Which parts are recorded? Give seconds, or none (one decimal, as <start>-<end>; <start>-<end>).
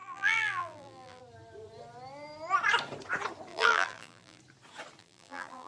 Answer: 1.2-3.5; 4.4-5.0